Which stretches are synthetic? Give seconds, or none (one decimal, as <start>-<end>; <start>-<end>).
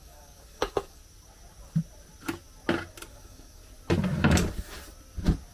0.0-1.0; 3.1-3.6